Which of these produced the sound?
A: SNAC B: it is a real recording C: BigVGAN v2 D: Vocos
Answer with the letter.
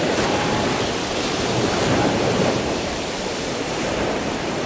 C